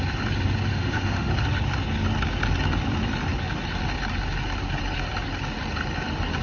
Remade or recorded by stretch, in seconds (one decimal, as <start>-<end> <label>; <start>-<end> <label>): 0.0-0.7 recorded; 0.7-1.3 remade; 1.3-6.4 recorded